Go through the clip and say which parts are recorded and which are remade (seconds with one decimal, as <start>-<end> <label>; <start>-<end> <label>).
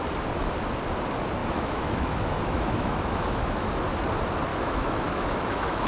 0.0-1.4 recorded; 1.4-3.7 remade; 3.7-4.5 recorded; 4.5-5.9 remade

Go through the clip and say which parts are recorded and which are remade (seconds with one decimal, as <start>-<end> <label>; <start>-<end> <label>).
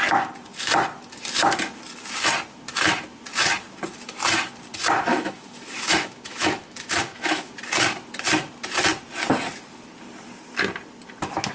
0.0-5.1 recorded; 5.1-7.5 remade; 7.5-11.5 recorded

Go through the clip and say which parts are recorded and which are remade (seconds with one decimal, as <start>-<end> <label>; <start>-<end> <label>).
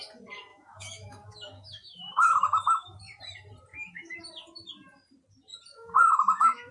0.0-0.5 recorded; 0.5-3.2 remade; 3.2-3.7 recorded; 3.7-4.2 remade; 4.2-5.7 recorded; 5.7-6.7 remade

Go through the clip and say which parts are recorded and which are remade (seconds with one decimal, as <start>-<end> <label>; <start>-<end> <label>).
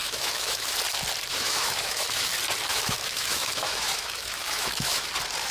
0.0-0.8 remade; 0.8-1.3 recorded; 1.3-2.3 remade; 2.3-2.7 recorded; 2.7-5.1 remade; 5.1-5.5 recorded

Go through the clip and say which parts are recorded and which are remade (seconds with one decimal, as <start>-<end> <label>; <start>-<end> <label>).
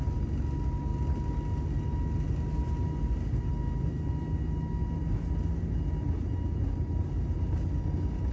0.0-8.3 recorded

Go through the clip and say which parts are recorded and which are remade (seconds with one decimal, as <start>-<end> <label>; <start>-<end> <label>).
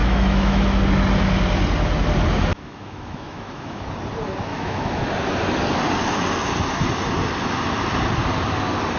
0.0-0.8 remade; 0.8-2.5 recorded; 2.5-3.8 remade; 3.8-4.5 recorded; 4.5-5.0 remade; 5.0-9.0 recorded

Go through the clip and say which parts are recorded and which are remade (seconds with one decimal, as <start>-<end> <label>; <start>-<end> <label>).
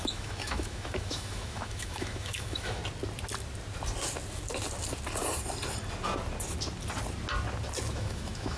0.0-2.8 remade; 2.8-7.9 recorded; 7.9-8.6 remade